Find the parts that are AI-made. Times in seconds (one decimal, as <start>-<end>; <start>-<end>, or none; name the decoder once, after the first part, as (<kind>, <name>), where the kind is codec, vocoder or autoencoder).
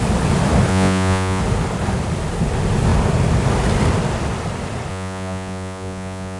0.7-1.4 (vocoder, Vocos); 4.9-6.4